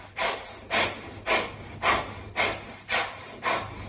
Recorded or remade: recorded